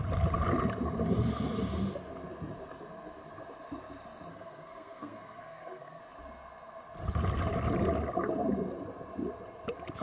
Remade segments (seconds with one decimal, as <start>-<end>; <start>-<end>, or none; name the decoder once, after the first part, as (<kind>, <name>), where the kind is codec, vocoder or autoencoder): 4.3-6.0 (codec, SNAC)